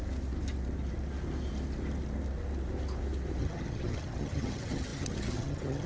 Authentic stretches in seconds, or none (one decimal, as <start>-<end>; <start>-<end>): 0.0-3.4